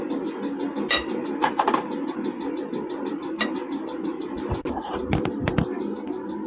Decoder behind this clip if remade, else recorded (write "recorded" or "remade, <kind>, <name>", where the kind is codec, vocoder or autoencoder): recorded